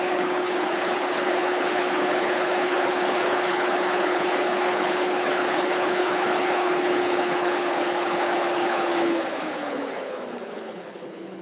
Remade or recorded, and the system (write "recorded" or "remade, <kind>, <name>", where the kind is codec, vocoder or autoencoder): remade, codec, HILCodec